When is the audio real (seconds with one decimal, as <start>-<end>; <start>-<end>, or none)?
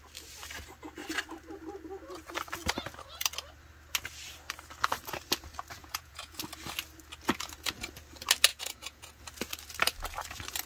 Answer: 0.0-5.8; 6.4-8.5; 9.2-10.7